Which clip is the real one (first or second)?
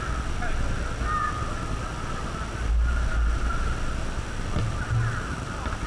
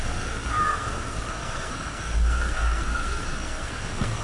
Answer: first